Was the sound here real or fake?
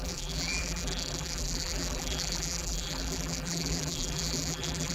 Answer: fake